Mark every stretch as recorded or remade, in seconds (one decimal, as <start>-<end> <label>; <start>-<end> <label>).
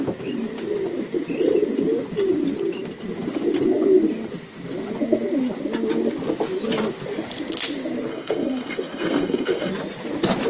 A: 0.0-8.1 recorded; 8.1-9.7 remade; 9.7-10.5 recorded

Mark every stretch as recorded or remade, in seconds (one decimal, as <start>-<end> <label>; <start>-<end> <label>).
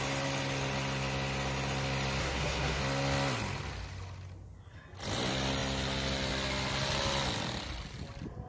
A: 0.0-2.2 recorded; 2.2-2.8 remade; 2.8-8.5 recorded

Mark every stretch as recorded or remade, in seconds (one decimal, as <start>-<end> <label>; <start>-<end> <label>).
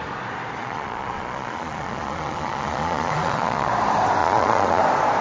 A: 0.0-0.6 recorded; 0.6-3.7 remade; 3.7-4.2 recorded; 4.2-4.8 remade; 4.8-5.2 recorded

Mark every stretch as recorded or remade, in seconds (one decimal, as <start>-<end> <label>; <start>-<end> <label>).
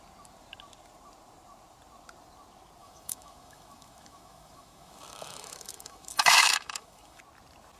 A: 0.0-2.8 recorded; 2.8-7.2 remade; 7.2-7.8 recorded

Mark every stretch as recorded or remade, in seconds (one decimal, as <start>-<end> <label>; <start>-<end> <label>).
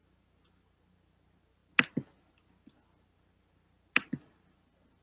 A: 0.0-5.0 recorded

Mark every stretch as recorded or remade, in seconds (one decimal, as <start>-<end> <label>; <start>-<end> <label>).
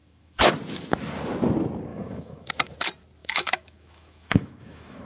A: 0.0-0.5 remade; 0.5-1.9 recorded; 1.9-2.5 remade; 2.5-3.2 recorded; 3.2-5.0 remade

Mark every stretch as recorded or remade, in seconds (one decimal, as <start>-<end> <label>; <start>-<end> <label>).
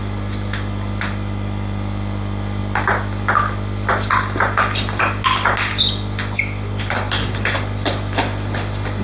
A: 0.0-9.0 recorded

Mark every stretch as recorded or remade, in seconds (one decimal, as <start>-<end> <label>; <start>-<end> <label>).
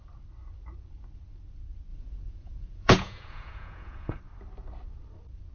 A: 0.0-1.9 recorded; 1.9-4.2 remade; 4.2-5.5 recorded